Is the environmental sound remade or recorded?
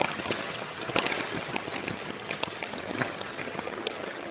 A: remade